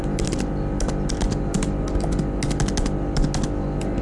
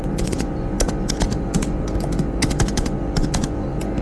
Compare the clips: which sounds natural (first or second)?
first